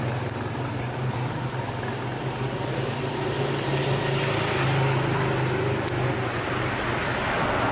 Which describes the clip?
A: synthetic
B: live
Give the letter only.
B